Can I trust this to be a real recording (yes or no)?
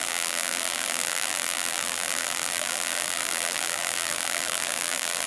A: no